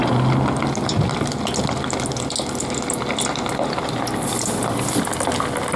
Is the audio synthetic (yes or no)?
no